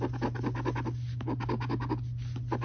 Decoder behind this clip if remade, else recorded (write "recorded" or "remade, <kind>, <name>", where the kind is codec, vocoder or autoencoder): recorded